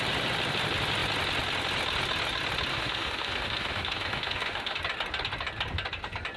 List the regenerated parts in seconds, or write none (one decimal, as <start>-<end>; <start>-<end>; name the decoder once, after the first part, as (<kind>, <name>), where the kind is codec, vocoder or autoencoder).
2.7-4.8 (autoencoder, DAC-VAE)